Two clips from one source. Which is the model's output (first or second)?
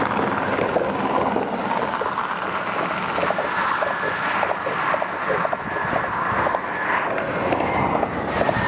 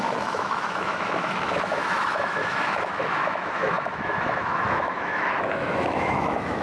second